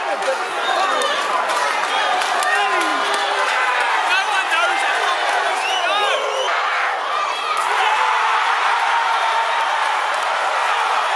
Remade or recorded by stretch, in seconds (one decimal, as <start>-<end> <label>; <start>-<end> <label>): 0.0-2.9 recorded; 2.9-3.9 remade; 3.9-8.3 recorded; 8.3-10.7 remade; 10.7-11.2 recorded